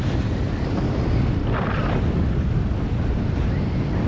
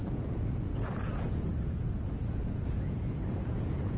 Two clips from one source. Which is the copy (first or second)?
second